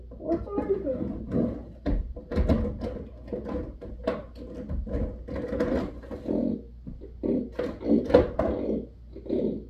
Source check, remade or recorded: recorded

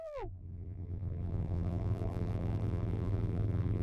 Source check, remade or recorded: remade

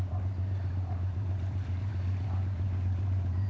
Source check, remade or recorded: remade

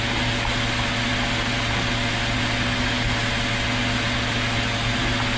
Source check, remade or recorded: recorded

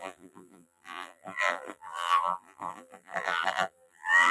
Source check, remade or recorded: remade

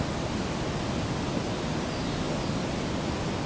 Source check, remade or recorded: recorded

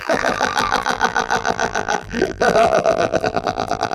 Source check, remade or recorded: remade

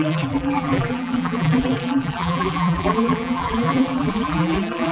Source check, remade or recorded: remade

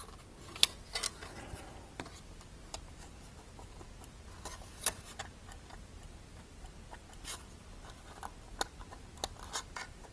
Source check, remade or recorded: recorded